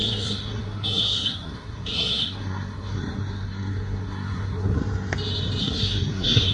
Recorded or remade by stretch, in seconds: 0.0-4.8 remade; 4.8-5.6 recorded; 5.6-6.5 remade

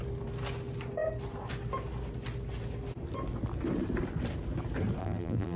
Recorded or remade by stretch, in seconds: 0.0-5.0 recorded; 5.0-5.6 remade

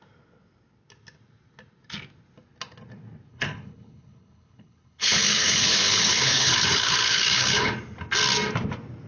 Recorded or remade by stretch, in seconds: 0.0-3.3 recorded; 3.3-7.7 remade; 7.7-9.1 recorded

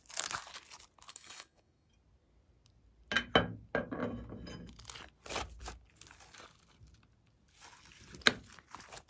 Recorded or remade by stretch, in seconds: 0.0-1.1 recorded; 1.1-1.9 remade; 1.9-9.1 recorded

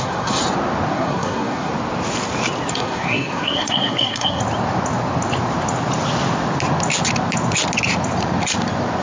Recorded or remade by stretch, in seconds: 0.0-0.4 remade; 0.4-0.9 recorded; 0.9-1.7 remade; 1.7-2.7 recorded; 2.7-4.4 remade; 4.4-9.0 recorded

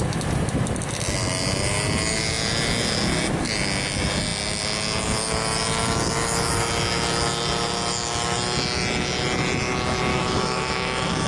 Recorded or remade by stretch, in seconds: 0.0-10.1 recorded; 10.1-11.3 remade